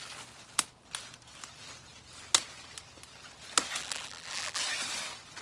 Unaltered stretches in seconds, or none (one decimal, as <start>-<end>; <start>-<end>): 0.0-3.8; 4.6-5.4